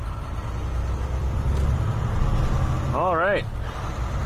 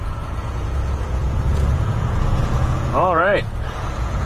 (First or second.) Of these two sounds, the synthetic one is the second